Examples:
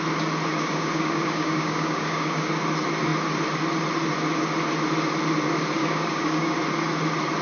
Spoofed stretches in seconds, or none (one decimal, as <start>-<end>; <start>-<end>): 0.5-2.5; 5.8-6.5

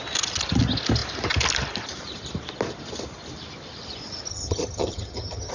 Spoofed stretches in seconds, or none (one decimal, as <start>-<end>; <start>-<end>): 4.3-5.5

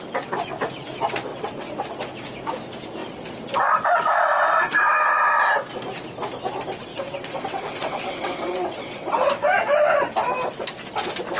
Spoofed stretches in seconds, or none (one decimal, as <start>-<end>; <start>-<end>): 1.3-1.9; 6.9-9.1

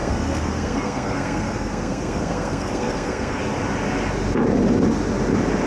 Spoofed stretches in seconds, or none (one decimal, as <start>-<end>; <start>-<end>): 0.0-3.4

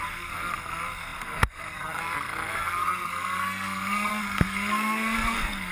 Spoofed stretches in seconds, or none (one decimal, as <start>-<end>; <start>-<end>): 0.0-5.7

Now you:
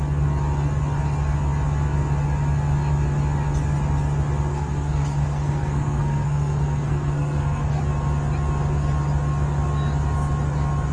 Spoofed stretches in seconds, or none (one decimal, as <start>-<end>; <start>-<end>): 4.5-7.8